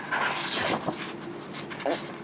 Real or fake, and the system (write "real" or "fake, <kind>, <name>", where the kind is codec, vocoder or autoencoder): real